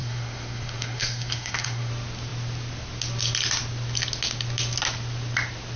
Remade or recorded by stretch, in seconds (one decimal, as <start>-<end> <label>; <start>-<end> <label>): 0.0-1.9 remade; 1.9-5.8 recorded